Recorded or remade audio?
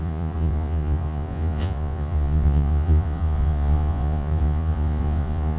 remade